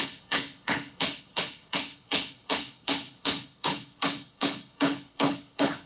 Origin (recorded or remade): remade